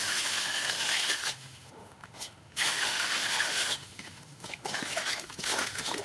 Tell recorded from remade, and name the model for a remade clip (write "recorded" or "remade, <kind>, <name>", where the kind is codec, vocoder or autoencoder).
remade, autoencoder, DAC-VAE